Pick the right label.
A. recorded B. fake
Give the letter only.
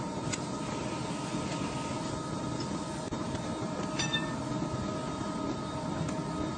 A